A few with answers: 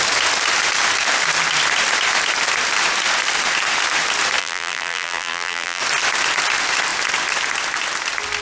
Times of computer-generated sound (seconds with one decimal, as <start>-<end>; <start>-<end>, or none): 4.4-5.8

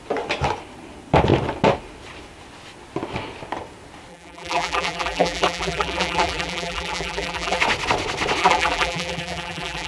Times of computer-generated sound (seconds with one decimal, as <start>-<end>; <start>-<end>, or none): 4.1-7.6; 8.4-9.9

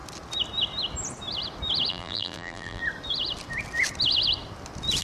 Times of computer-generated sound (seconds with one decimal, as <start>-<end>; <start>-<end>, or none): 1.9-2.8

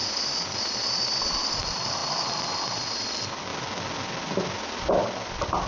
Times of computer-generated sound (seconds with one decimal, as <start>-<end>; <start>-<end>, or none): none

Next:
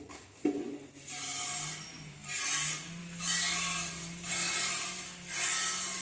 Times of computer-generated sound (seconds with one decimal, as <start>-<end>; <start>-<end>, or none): none

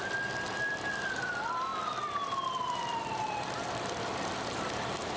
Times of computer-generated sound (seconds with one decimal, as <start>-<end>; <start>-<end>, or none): 0.0-5.2

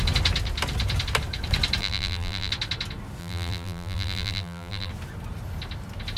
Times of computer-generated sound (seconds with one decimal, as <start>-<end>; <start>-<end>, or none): 1.8-2.5; 3.2-4.9

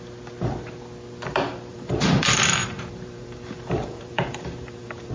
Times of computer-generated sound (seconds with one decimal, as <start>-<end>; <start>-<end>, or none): 1.7-5.1